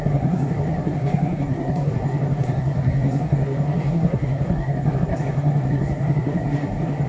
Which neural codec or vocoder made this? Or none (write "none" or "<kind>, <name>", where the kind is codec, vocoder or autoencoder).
codec, SNAC